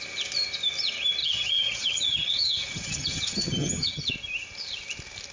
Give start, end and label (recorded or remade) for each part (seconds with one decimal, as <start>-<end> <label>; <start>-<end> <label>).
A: 0.0-1.2 recorded; 1.2-4.1 remade; 4.1-5.3 recorded